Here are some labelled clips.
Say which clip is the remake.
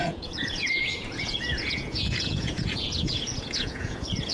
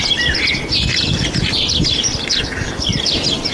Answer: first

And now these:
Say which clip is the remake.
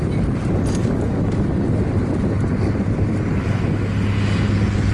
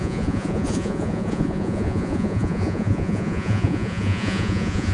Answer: second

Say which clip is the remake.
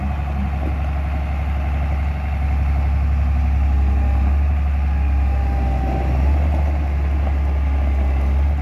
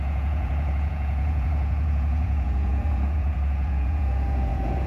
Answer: second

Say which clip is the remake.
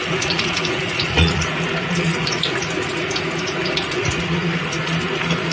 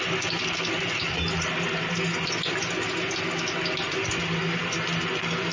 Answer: first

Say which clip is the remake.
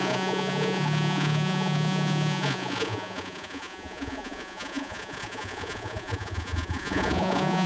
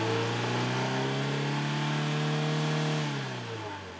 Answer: first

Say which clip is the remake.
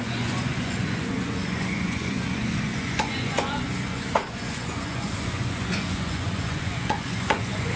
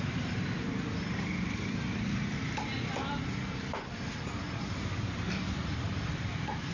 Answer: first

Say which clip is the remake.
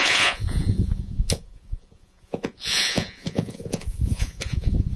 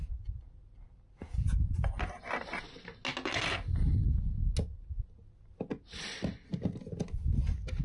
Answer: first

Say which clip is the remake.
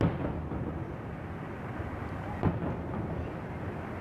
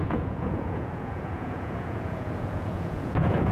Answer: second